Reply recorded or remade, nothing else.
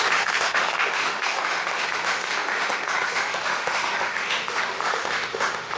remade